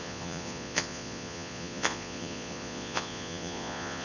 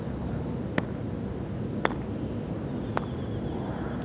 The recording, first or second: second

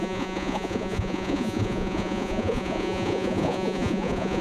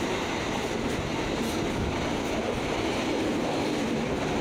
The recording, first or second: second